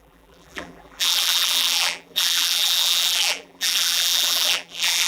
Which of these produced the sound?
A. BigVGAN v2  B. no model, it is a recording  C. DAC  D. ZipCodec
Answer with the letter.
A